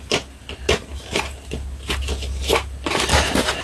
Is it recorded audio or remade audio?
recorded